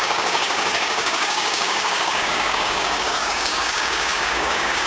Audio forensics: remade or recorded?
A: remade